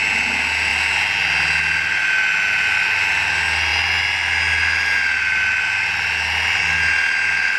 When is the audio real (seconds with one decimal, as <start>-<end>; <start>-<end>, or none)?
0.0-7.6

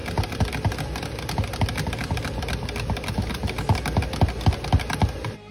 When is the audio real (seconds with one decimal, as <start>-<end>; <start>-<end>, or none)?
0.0-5.5

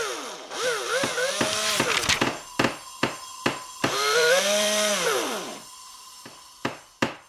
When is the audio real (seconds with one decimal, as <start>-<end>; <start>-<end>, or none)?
0.0-3.3

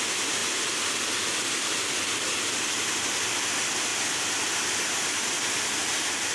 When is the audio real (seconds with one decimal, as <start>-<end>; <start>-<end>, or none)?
0.4-2.9

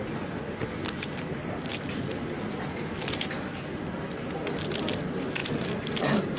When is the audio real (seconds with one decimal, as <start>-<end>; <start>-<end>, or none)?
0.0-6.4

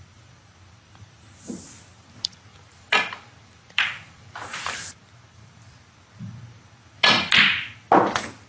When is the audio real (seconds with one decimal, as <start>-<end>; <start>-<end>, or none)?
0.0-2.5; 5.8-8.5

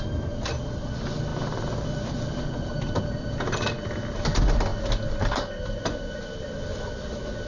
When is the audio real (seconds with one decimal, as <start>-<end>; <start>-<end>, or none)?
0.0-1.3; 3.0-7.5